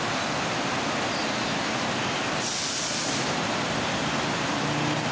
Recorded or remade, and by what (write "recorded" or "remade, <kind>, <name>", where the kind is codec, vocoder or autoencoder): recorded